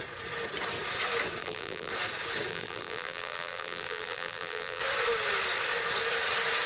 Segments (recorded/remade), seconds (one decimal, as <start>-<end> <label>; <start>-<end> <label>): 0.0-1.4 recorded; 1.4-1.9 remade; 1.9-2.5 recorded; 2.5-4.8 remade; 4.8-6.7 recorded

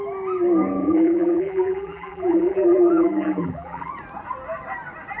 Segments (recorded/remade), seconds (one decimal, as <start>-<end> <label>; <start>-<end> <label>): 0.0-0.8 recorded; 0.8-3.9 remade; 3.9-5.2 recorded